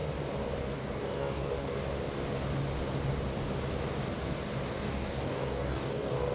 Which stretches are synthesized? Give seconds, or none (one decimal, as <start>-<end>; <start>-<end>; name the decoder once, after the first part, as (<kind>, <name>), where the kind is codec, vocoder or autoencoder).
0.8-1.8 (codec, DAC); 4.7-6.3